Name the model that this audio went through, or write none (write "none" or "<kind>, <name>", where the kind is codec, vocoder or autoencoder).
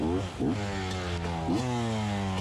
none